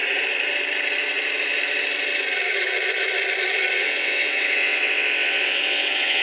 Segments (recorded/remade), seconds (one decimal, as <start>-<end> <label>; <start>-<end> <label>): 0.0-3.7 recorded; 3.7-6.2 remade